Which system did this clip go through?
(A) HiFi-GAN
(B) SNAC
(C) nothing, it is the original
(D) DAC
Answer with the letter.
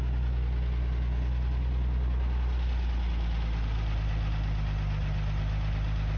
C